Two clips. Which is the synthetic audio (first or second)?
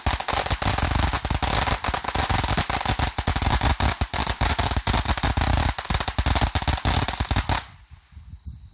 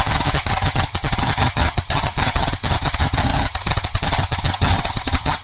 second